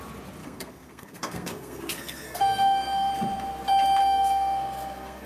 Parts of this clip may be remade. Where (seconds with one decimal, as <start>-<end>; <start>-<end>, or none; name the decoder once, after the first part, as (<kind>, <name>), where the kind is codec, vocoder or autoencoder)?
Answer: 0.4-3.1 (codec, SNAC); 4.0-5.3